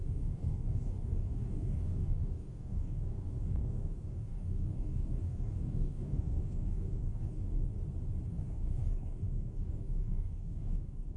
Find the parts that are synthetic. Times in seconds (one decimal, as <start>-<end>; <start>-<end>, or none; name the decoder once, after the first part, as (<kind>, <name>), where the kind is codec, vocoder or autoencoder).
0.0-7.7 (codec, DAC); 8.3-11.2